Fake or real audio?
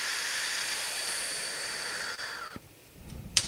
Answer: fake